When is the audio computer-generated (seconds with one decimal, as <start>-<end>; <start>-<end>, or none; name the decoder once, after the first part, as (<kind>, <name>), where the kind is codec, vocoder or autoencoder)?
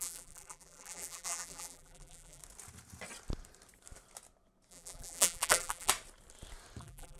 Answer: 0.0-2.4 (vocoder, BigVGAN v2); 4.7-5.9; 6.8-7.2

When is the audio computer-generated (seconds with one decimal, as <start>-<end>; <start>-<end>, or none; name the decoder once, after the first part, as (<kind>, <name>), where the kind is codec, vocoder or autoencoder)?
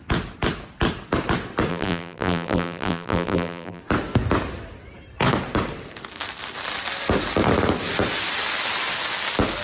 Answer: 1.7-3.8 (vocoder, BigVGAN v2)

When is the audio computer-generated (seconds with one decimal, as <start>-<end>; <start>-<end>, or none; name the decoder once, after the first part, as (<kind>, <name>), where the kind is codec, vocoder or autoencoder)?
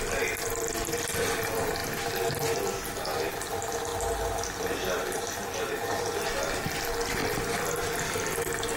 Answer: 3.9-6.1 (vocoder, BigVGAN v2)